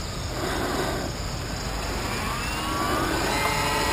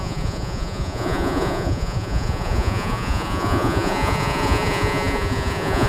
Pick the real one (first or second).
first